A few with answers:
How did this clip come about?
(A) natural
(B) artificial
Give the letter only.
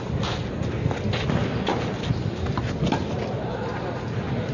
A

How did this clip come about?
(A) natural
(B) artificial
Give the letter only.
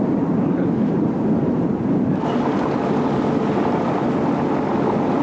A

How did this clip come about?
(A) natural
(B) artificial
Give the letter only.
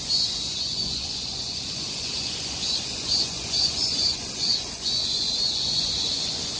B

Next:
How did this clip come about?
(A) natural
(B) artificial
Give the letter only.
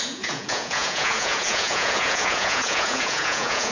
B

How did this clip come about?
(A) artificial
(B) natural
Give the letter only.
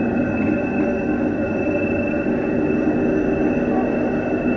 B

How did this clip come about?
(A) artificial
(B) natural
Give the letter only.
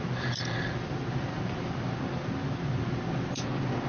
B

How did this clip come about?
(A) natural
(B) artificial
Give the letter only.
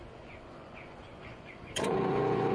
B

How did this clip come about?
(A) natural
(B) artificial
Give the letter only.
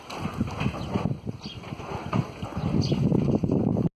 A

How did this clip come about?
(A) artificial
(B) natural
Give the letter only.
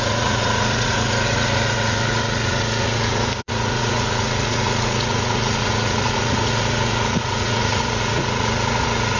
A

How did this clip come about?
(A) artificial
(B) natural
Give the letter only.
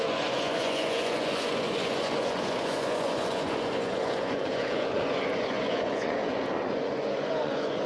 A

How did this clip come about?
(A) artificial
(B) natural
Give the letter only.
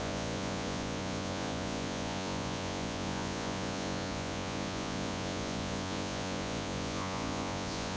A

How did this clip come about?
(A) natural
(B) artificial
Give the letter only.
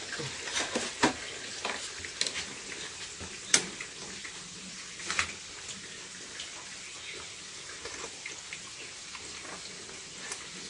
A